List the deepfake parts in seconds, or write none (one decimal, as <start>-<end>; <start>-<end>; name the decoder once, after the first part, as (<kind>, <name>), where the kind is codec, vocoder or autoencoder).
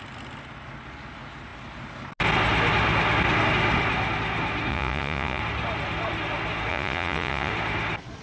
4.7-5.4 (vocoder, Vocos); 6.7-7.5